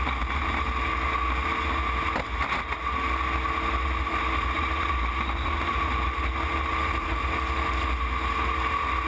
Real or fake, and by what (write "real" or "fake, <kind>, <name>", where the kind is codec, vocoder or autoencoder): real